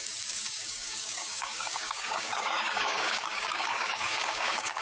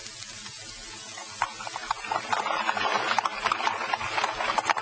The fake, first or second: first